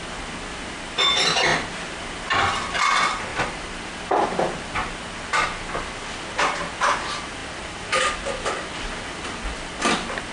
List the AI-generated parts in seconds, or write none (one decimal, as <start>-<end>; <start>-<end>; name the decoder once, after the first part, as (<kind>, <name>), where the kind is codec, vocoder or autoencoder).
3.3-3.9 (vocoder, BigVGAN v2)